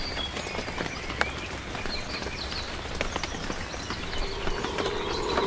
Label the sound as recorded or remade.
recorded